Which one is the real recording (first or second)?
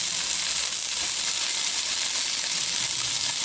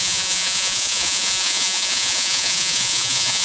first